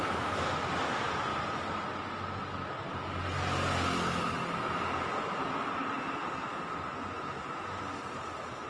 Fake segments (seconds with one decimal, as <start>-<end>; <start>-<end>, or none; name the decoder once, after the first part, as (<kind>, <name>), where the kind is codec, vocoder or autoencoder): none